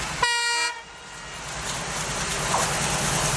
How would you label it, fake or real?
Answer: real